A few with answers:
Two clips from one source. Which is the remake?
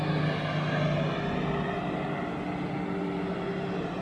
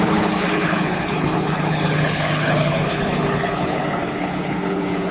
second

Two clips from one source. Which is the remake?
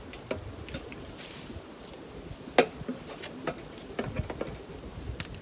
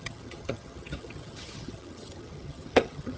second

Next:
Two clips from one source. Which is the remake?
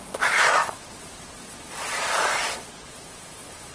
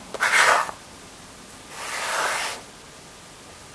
first